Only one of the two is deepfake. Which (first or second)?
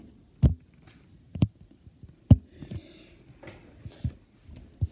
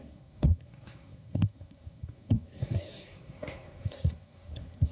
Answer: second